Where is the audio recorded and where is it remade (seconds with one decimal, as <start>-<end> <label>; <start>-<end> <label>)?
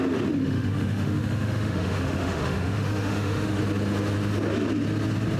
0.0-0.4 recorded; 0.4-3.6 remade; 3.6-5.4 recorded